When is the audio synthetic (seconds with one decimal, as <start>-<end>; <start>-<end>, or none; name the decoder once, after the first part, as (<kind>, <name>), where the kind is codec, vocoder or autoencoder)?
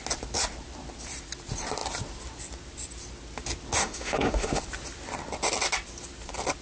3.8-4.6 (autoencoder, DAC-VAE)